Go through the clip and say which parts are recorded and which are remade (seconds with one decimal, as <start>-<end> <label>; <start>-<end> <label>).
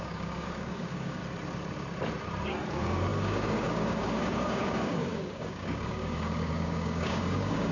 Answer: 0.0-1.2 remade; 1.2-2.7 recorded; 2.7-7.7 remade